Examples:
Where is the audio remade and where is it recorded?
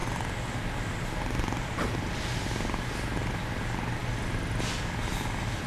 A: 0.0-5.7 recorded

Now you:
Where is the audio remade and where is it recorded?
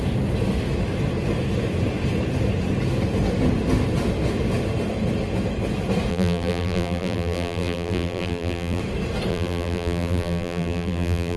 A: 0.0-6.1 recorded; 6.1-8.8 remade; 8.8-9.3 recorded; 9.3-11.4 remade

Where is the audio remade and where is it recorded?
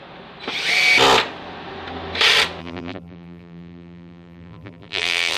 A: 0.0-2.6 recorded; 2.6-5.4 remade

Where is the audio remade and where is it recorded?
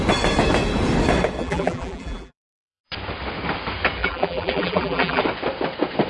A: 0.0-1.4 recorded; 1.4-2.8 remade; 2.8-4.0 recorded; 4.0-5.2 remade; 5.2-6.1 recorded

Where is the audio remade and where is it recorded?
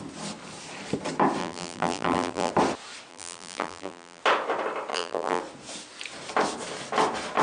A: 0.0-1.4 recorded; 1.4-2.5 remade; 2.5-3.1 recorded; 3.1-4.2 remade; 4.2-4.9 recorded; 4.9-5.4 remade; 5.4-7.4 recorded